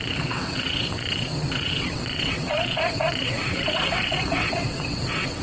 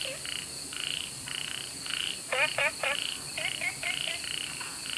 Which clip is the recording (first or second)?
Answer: second